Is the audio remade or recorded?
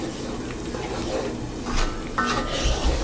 recorded